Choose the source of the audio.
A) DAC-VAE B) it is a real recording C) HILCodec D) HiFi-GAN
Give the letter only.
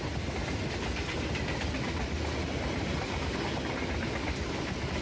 B